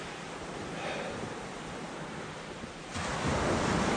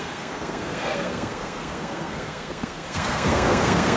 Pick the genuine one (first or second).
first